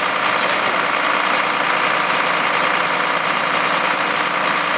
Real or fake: real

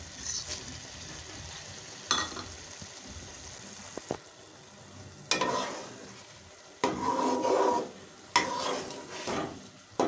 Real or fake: real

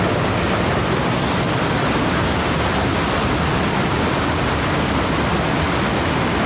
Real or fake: real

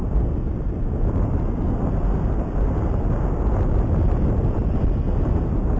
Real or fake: real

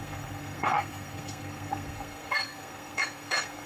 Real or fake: fake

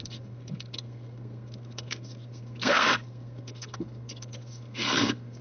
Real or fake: fake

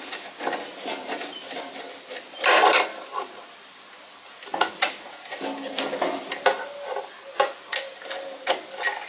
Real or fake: real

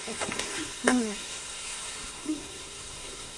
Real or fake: fake